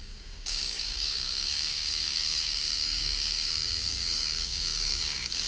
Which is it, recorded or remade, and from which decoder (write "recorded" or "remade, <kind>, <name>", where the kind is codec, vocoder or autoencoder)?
remade, codec, DAC